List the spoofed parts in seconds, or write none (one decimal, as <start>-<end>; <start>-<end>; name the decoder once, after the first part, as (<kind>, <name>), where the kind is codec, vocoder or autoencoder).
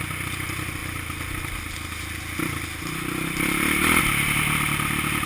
none